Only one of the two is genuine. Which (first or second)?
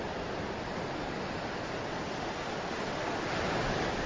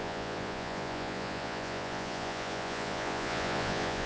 first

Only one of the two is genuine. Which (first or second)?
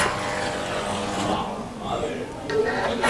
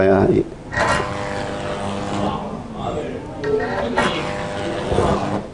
second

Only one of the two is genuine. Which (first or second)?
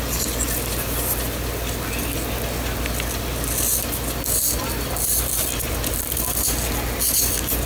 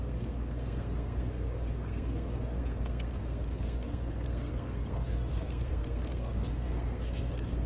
first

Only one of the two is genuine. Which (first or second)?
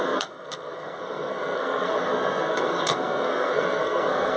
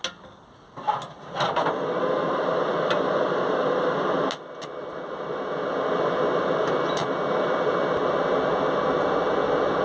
second